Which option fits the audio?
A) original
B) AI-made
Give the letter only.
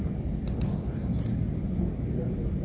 A